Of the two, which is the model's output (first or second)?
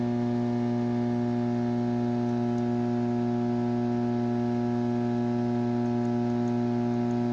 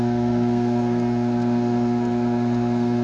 second